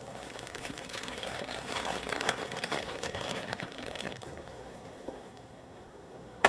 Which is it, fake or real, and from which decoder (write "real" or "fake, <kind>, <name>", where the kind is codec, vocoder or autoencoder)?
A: fake, codec, SNAC